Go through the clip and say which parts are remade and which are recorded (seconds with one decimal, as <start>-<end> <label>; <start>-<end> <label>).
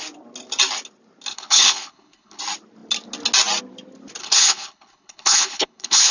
0.0-1.3 recorded; 1.3-2.4 remade; 2.4-4.2 recorded; 4.2-6.1 remade